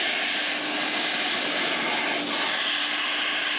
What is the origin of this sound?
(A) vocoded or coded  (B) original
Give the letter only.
B